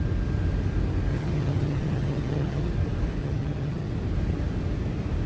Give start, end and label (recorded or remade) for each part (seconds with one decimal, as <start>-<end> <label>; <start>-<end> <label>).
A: 0.0-1.1 recorded; 1.1-2.7 remade; 2.7-3.2 recorded; 3.2-3.9 remade; 3.9-5.3 recorded